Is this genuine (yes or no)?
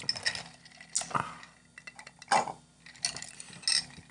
yes